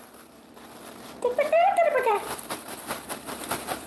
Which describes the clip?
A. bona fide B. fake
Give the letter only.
B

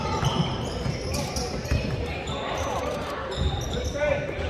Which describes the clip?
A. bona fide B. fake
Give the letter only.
B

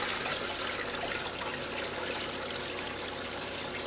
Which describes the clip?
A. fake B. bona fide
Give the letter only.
B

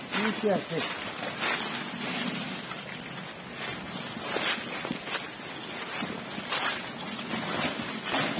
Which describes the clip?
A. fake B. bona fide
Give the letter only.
B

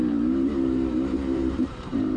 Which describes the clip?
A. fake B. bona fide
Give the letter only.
A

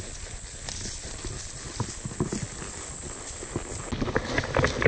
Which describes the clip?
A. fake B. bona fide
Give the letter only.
B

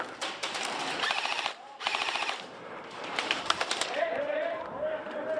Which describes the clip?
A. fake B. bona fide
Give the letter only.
A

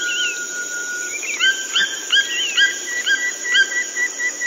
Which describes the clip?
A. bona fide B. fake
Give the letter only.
A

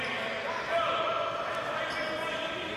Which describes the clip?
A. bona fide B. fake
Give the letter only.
A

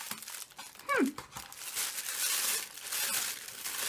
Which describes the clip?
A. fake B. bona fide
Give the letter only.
B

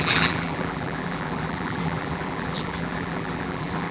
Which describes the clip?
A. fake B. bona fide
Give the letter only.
A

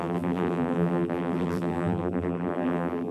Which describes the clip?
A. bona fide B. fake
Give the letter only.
B